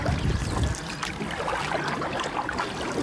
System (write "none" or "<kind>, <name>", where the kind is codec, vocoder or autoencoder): none